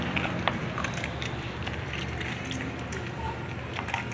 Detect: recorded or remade recorded